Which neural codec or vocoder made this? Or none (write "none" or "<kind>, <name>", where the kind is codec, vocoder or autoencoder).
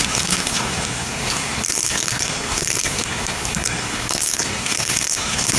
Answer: codec, SNAC